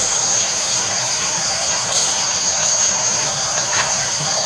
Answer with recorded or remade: remade